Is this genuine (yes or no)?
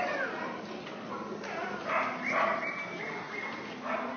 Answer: yes